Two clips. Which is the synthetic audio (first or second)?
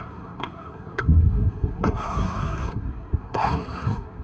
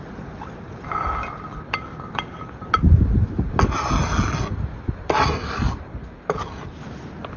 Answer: first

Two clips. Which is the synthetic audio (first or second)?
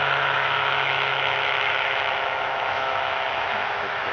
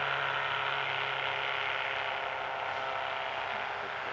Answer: first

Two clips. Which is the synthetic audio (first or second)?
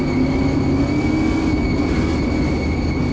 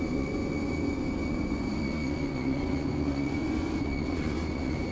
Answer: second